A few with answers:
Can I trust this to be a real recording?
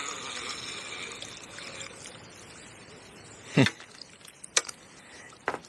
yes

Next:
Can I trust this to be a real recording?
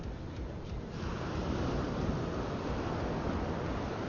yes